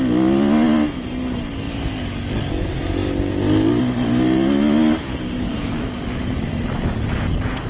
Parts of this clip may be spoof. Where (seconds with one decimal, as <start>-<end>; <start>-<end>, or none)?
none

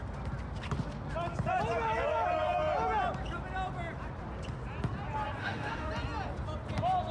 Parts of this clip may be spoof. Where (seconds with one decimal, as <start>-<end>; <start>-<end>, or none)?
5.4-5.9

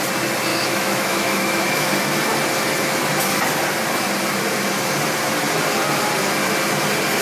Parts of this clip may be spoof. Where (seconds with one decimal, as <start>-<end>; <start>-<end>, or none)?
0.5-1.9

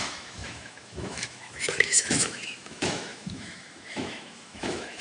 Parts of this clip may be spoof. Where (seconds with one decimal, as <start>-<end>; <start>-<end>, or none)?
0.0-5.0

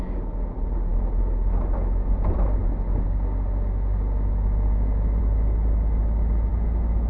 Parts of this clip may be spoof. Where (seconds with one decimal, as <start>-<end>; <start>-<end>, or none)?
none